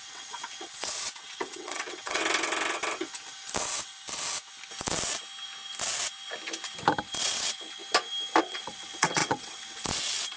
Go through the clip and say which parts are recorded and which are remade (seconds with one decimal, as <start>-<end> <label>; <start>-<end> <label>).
0.0-2.2 remade; 2.2-7.2 recorded; 7.2-7.8 remade; 7.8-8.4 recorded; 8.4-10.4 remade